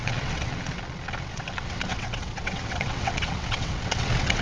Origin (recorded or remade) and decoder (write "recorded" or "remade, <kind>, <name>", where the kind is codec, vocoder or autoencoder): remade, vocoder, WaveNeXt